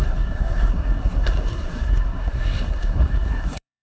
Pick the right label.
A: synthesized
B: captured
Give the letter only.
A